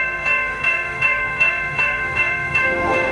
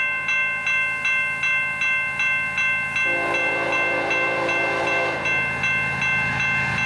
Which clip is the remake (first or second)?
first